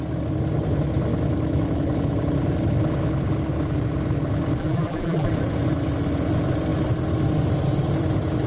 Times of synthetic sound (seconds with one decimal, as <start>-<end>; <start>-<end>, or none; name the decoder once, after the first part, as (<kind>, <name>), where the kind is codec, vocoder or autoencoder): 4.6-5.3 (vocoder, BigVGAN v2)